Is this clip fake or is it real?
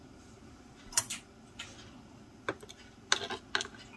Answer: real